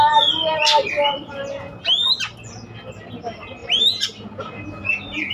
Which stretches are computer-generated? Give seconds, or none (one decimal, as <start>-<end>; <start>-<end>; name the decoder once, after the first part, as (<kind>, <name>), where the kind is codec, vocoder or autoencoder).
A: none